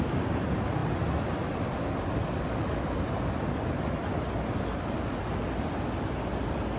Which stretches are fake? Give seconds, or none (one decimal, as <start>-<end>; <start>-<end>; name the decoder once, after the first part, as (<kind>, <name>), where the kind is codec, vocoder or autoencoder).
none